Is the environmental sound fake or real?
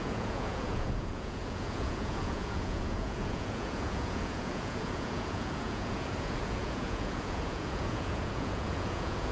fake